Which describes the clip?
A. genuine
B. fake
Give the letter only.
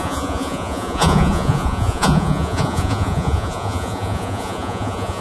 B